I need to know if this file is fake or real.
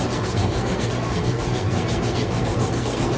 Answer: fake